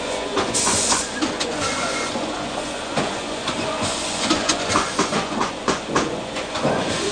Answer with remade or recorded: remade